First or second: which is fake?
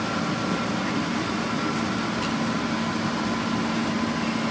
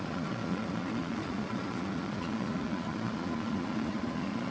second